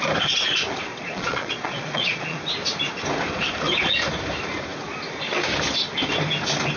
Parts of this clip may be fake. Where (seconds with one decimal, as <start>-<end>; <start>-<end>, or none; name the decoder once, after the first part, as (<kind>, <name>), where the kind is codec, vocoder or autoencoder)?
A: 0.9-2.4 (vocoder, Vocos)